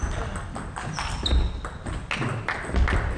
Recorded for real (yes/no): yes